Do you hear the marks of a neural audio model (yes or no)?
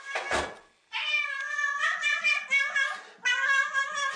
no